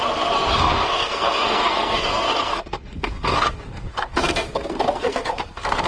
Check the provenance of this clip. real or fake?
fake